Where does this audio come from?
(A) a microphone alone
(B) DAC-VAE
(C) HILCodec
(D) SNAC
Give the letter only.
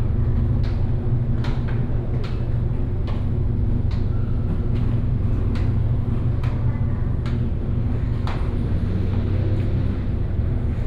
A